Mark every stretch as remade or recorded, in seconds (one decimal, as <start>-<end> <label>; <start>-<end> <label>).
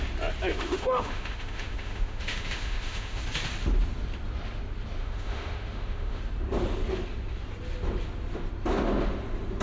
0.0-0.5 recorded; 0.5-3.2 remade; 3.2-5.0 recorded; 5.0-6.2 remade; 6.2-9.6 recorded